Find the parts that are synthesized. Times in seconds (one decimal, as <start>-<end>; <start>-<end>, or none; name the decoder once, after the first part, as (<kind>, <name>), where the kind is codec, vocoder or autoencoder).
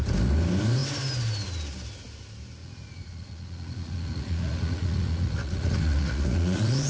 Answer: 2.6-6.9 (vocoder, Vocos)